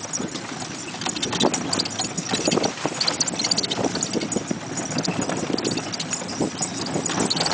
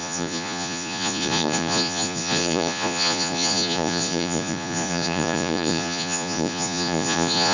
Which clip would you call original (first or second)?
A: first